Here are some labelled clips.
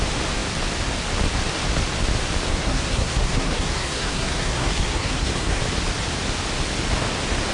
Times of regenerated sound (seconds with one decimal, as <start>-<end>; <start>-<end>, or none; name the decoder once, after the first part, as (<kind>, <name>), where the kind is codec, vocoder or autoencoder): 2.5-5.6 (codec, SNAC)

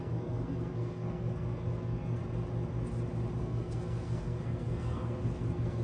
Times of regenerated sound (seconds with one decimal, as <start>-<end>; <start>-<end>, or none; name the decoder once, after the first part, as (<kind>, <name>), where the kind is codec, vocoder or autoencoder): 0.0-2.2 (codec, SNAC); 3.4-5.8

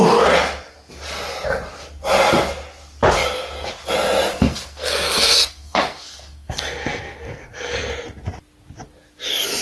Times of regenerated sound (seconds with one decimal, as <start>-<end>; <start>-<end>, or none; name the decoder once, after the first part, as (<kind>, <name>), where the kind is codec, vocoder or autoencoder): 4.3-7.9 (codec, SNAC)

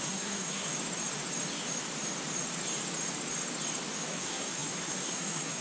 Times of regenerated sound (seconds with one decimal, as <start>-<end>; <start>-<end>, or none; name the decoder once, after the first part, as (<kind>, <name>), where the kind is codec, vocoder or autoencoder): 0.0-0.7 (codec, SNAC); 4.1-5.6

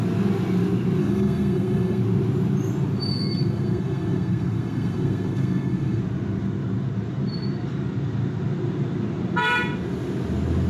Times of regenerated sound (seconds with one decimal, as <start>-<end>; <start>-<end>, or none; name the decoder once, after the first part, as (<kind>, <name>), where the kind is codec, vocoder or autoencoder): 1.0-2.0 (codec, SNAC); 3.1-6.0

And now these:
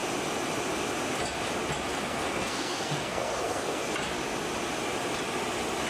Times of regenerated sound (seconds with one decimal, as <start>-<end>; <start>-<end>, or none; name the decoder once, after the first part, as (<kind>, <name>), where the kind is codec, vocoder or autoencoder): 1.9-3.8 (codec, SNAC)